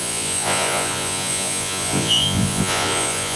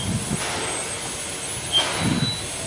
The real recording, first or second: second